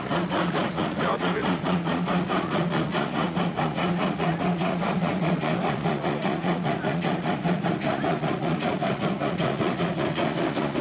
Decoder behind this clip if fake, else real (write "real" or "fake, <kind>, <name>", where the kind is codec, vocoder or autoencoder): fake, vocoder, Vocos